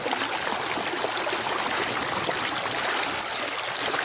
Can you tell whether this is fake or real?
real